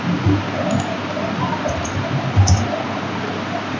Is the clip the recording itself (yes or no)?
yes